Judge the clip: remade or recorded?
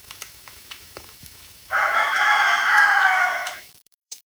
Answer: remade